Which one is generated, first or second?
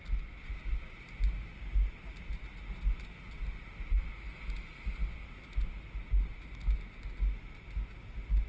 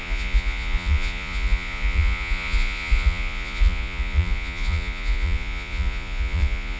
second